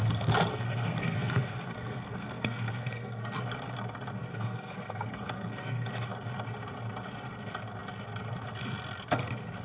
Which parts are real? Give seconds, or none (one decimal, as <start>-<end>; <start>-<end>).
0.0-0.5; 3.4-4.3; 5.9-9.6